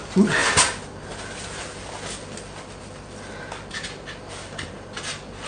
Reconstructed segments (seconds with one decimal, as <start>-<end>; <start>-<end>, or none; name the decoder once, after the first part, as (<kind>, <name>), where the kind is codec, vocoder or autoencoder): none